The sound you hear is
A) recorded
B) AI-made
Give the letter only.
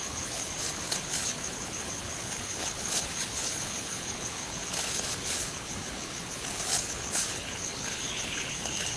B